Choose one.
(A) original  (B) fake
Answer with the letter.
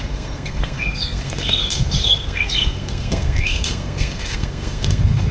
B